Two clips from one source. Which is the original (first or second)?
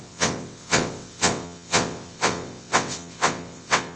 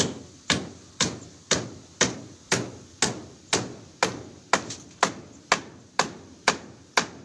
second